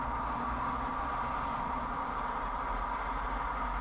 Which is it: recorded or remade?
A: recorded